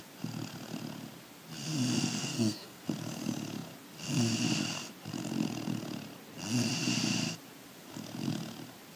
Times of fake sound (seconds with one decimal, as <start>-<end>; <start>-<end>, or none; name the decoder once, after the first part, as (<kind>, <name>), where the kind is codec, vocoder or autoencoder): 2.2-2.8 (codec, SNAC)